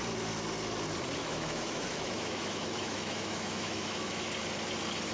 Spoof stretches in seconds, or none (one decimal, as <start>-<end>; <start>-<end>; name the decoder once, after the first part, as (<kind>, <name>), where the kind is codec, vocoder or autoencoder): 1.2-4.3 (autoencoder, DAC-VAE)